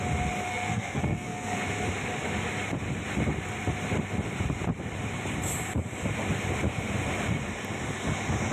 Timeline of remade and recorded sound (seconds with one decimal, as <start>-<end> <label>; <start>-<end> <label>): 0.0-0.5 recorded; 0.5-1.6 remade; 1.6-8.5 recorded